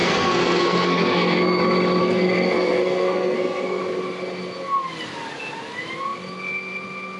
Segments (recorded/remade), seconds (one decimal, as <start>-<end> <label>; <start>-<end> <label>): 0.0-1.6 remade; 1.6-2.0 recorded; 2.0-3.8 remade; 3.8-7.2 recorded